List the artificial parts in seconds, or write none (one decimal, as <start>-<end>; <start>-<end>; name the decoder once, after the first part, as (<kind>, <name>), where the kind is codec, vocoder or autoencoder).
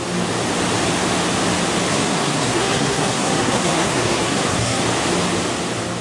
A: 1.9-4.8 (codec, SNAC)